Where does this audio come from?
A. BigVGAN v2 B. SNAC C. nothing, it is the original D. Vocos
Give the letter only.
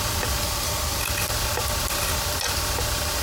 C